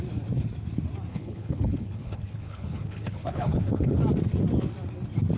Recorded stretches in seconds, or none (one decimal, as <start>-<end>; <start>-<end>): 0.0-1.1; 4.0-5.4